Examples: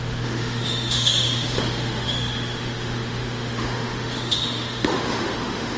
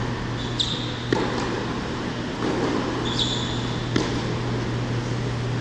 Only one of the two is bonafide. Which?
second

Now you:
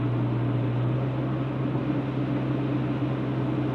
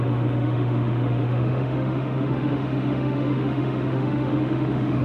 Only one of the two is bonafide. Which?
first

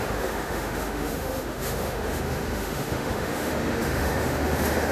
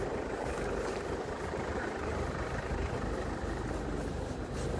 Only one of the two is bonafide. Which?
second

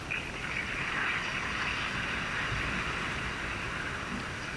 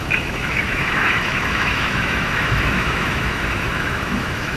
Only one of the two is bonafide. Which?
first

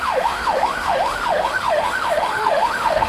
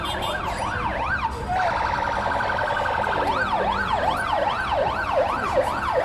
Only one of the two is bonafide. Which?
second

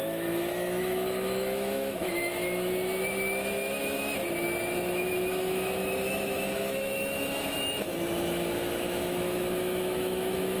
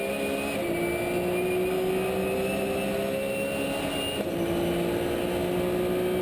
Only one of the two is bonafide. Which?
second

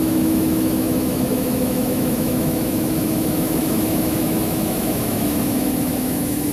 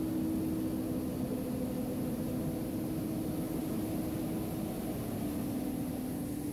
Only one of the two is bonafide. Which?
second